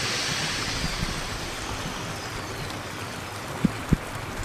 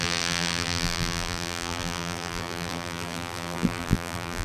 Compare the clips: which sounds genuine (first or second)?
first